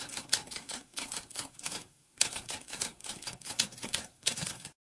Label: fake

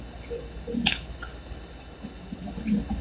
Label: fake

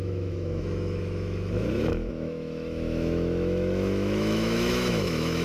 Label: fake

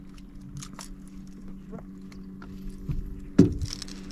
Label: real